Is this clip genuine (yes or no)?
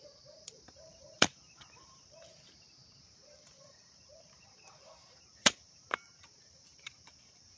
no